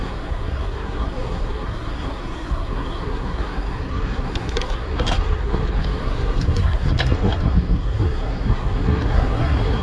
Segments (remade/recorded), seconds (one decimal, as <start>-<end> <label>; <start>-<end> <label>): 0.0-9.8 remade